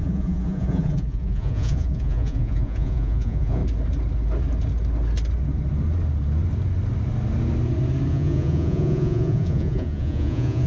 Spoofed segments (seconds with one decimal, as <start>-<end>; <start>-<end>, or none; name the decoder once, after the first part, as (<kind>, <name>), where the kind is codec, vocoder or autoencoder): 0.0-3.6 (vocoder, Vocos); 8.1-10.7